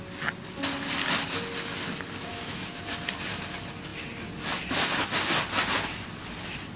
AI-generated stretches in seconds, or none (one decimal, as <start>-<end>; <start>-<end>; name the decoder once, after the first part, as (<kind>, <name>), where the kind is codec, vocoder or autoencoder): 2.3-2.8 (autoencoder, DAC-VAE)